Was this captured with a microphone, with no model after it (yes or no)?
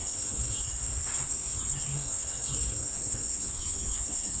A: no